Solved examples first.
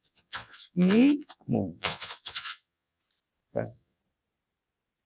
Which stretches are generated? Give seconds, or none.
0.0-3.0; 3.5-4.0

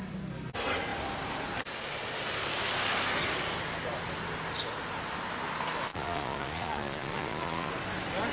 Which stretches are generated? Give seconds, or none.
5.9-7.7

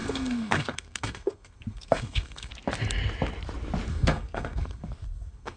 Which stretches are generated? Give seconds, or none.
0.0-2.5; 3.9-5.6

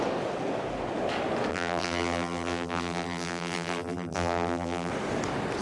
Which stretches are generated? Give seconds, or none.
1.5-4.9